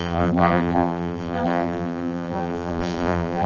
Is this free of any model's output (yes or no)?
no